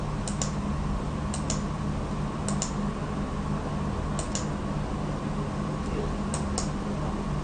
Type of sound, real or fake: real